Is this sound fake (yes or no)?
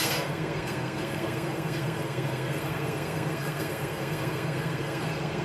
yes